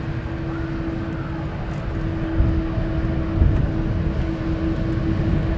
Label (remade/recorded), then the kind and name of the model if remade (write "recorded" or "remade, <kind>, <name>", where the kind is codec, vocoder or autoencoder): recorded